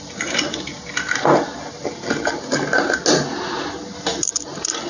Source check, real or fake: real